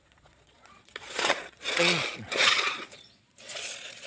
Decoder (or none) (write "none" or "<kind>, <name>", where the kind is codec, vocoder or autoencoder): vocoder, Vocos